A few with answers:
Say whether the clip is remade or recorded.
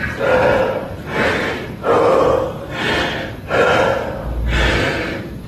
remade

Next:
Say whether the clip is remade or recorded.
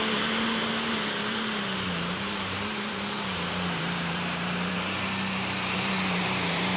remade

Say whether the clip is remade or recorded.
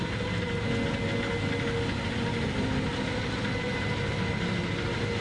recorded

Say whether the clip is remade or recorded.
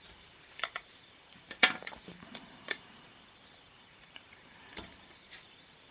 remade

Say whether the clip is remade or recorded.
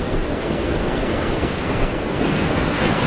remade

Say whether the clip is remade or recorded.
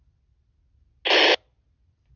recorded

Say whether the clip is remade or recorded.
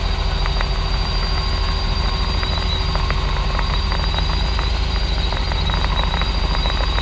recorded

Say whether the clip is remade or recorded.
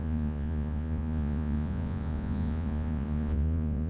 remade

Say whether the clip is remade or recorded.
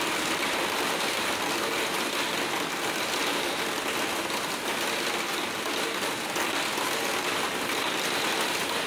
recorded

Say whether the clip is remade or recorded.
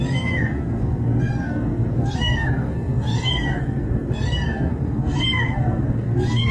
remade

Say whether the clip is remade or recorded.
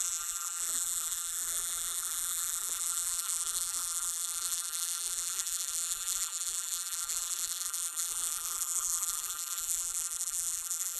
remade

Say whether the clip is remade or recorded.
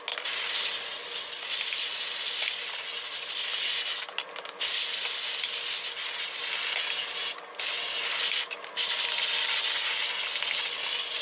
recorded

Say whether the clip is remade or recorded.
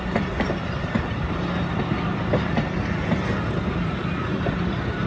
remade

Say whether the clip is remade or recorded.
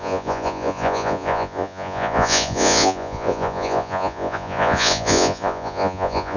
remade